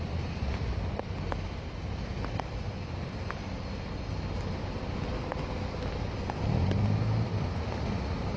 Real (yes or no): yes